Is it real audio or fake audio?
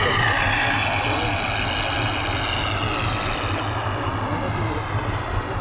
real